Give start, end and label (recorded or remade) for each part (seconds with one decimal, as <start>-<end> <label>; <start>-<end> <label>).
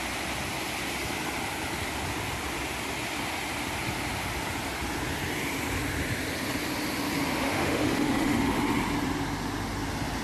0.0-7.4 recorded; 7.4-8.6 remade; 8.6-10.2 recorded